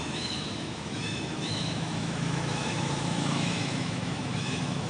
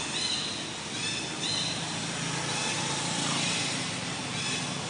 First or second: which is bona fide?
second